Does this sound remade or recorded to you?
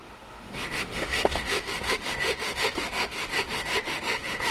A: remade